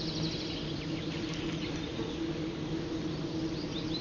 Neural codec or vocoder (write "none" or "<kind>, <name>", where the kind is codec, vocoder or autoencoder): none